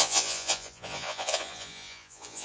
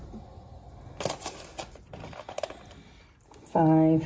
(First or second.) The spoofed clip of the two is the first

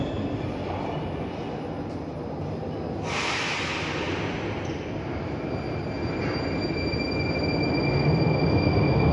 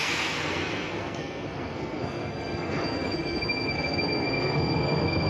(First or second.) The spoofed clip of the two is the second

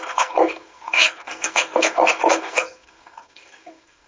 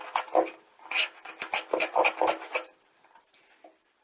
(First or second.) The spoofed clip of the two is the first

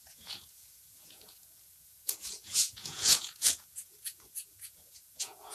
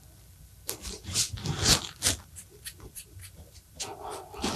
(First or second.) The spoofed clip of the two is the first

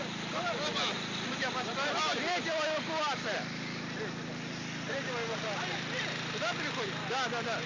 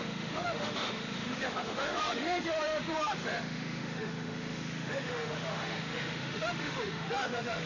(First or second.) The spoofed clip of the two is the second